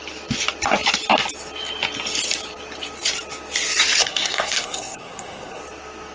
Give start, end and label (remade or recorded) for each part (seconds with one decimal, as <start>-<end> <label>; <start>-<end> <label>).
0.0-4.0 recorded; 4.0-5.6 remade; 5.6-6.1 recorded